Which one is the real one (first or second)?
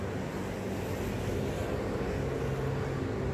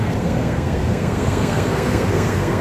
first